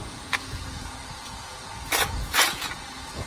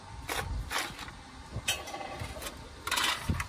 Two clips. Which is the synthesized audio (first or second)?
first